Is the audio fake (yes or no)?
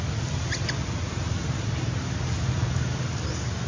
no